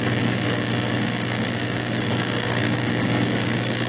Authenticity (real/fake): fake